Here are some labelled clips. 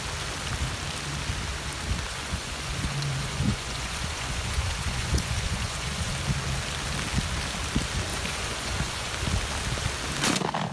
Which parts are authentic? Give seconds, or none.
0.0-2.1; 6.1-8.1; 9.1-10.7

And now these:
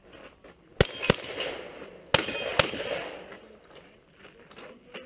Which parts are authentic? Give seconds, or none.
0.0-5.1

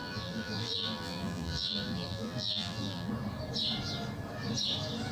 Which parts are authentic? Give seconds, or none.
3.1-5.1

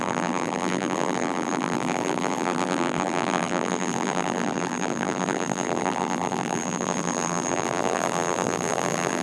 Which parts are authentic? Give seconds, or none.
none

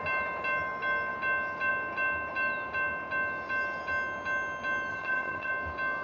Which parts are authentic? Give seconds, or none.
0.0-4.9; 5.5-6.0

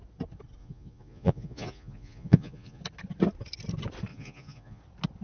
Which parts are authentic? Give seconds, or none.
0.0-0.6; 2.8-4.1; 4.8-5.2